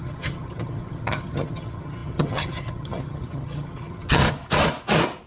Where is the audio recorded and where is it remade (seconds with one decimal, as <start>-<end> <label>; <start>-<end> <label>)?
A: 0.0-4.2 remade; 4.2-5.3 recorded

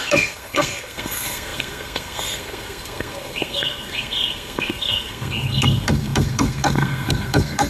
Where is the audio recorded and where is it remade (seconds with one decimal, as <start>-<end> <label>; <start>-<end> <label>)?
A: 0.0-7.7 remade

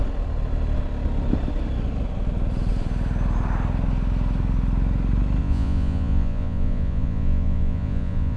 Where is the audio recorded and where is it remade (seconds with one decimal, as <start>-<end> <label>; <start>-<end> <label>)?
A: 0.0-5.4 recorded; 5.4-8.4 remade

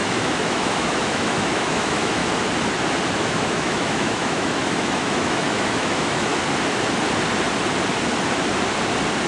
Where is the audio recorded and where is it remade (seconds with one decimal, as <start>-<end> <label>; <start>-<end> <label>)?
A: 0.0-2.2 remade; 2.2-3.1 recorded; 3.1-6.3 remade; 6.3-9.3 recorded

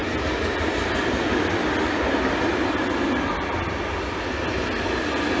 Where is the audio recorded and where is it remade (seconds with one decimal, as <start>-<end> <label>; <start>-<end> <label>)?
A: 0.0-5.4 recorded

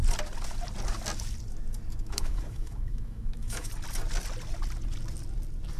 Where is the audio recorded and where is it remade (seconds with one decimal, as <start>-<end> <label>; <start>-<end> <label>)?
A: 0.0-2.0 recorded; 2.0-3.7 remade; 3.7-5.8 recorded